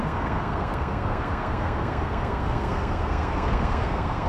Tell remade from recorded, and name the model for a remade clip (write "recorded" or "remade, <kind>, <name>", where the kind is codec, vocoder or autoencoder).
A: remade, codec, SNAC